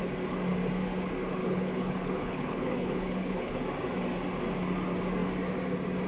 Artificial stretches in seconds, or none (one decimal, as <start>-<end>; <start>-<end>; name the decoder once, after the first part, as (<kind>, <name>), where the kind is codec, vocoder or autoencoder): 1.4-3.6 (codec, HILCodec)